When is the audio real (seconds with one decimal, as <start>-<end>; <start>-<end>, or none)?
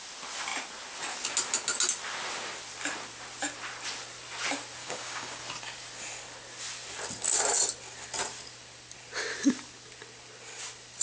0.0-4.8; 5.4-11.0